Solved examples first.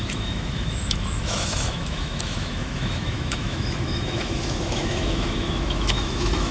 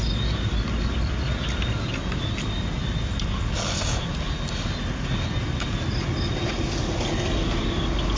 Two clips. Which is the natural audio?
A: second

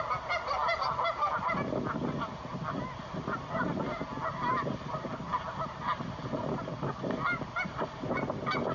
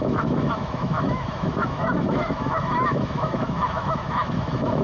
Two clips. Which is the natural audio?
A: first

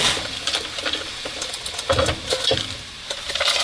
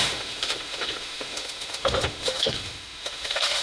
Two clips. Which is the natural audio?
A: first